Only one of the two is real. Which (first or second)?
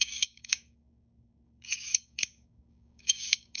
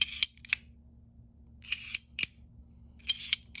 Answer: second